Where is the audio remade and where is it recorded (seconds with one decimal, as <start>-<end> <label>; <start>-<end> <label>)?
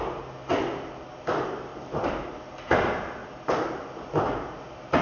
0.0-5.0 recorded